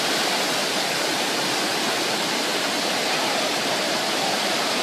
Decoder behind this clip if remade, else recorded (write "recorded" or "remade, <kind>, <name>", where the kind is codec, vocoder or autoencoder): recorded